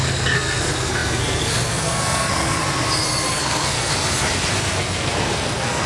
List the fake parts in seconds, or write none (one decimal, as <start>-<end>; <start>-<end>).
0.0-2.6; 3.3-3.9; 4.6-5.9